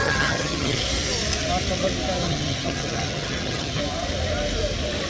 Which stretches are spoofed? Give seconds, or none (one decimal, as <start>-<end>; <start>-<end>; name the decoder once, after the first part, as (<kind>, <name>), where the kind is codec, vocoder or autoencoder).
0.0-0.8 (vocoder, HiFi-GAN); 2.2-3.8

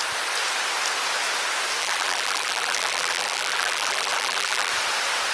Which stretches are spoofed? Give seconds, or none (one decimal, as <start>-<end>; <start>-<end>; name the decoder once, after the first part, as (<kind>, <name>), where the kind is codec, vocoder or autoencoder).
1.8-4.7 (vocoder, BigVGAN v2)